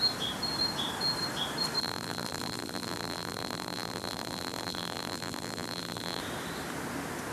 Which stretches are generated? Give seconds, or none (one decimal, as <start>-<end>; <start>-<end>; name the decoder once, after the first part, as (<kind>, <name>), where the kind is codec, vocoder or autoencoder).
1.8-6.2 (vocoder, BigVGAN v2)